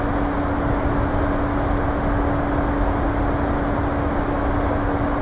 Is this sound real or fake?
real